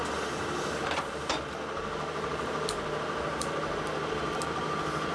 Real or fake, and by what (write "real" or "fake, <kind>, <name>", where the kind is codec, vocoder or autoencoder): fake, vocoder, BigVGAN v2